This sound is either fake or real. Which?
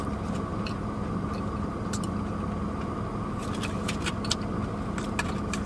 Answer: real